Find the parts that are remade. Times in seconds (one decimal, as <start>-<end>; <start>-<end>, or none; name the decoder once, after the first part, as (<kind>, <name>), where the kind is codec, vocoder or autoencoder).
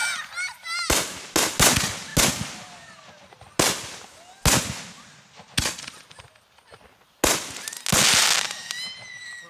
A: none